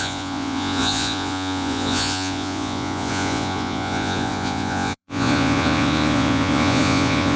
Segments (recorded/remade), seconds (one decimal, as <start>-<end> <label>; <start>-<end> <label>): 0.0-7.4 remade